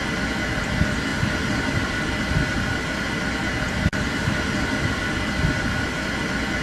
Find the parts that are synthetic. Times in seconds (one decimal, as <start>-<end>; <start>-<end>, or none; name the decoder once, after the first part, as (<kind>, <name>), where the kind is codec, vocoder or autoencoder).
3.4-4.2 (vocoder, BigVGAN v2)